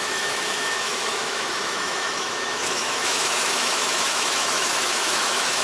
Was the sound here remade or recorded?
remade